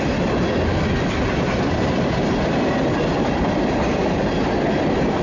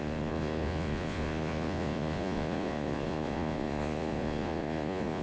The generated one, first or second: second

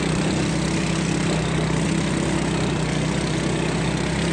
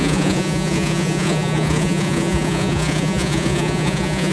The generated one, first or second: second